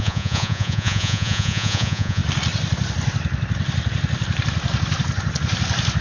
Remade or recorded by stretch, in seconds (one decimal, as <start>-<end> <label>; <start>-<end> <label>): 0.0-2.2 remade; 2.2-6.0 recorded